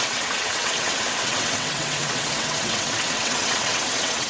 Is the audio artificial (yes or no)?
yes